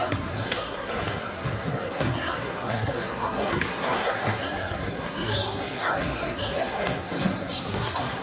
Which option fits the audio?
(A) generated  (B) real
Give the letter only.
A